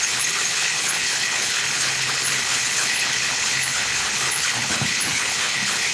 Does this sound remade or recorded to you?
remade